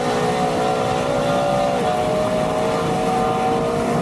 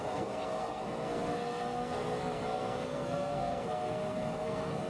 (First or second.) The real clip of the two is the first